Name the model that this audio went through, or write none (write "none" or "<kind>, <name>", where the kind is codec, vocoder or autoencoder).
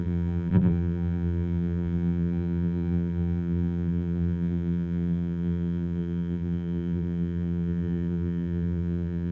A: vocoder, BigVGAN v2